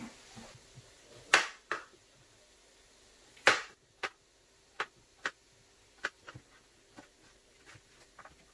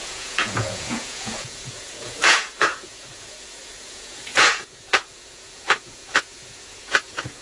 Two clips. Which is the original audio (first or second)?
first